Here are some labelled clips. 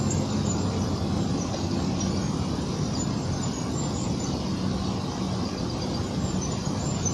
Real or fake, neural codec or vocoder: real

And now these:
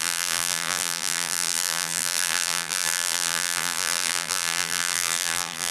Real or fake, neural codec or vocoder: fake, vocoder, BigVGAN v2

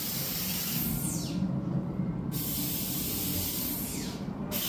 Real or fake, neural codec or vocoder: fake, vocoder, BigVGAN v2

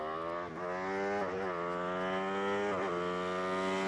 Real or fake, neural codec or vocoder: real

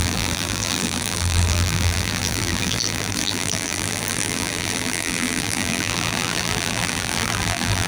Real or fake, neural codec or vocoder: fake, vocoder, BigVGAN v2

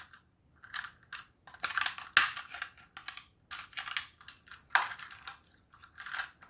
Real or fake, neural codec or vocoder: real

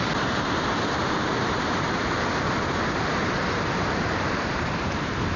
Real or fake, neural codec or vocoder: fake, vocoder, BigVGAN v2